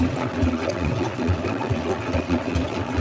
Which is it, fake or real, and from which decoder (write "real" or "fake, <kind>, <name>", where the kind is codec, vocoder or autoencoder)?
fake, vocoder, WaveNeXt